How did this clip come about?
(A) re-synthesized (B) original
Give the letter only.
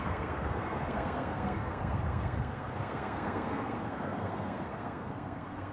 A